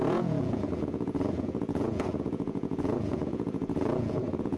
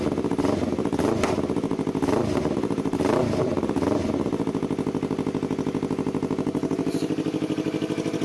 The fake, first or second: first